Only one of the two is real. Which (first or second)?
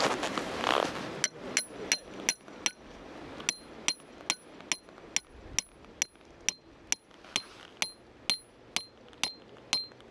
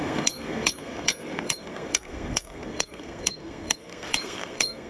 first